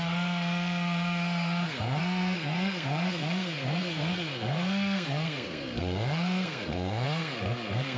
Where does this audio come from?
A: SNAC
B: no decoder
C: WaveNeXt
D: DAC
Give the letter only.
A